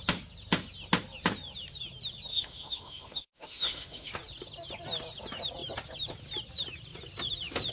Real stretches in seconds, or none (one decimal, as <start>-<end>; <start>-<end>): 0.0-2.3; 4.1-7.7